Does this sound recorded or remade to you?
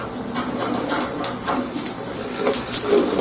recorded